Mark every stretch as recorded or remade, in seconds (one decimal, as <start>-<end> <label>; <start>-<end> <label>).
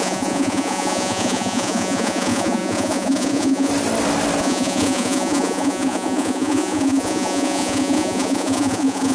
0.0-3.7 remade; 3.7-4.4 recorded; 4.4-9.1 remade